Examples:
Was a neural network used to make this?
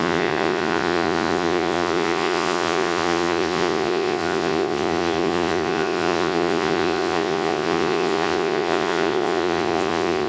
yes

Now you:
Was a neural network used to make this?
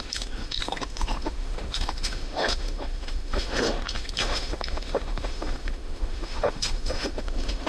yes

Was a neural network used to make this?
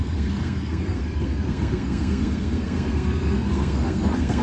yes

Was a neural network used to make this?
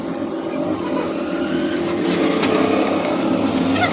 no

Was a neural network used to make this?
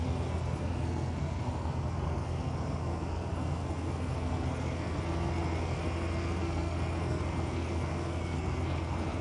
yes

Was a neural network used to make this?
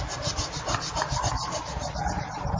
no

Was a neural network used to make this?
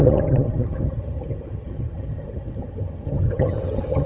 yes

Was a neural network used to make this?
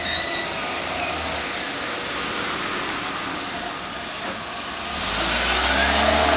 no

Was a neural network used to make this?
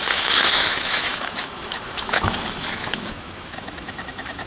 yes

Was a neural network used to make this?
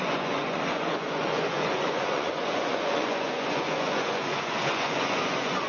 yes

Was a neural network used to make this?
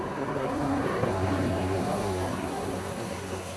yes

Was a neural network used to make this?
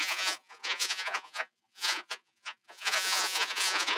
yes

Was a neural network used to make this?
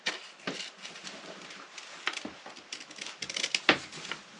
no